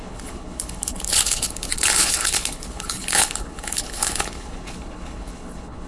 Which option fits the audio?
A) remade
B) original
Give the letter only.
A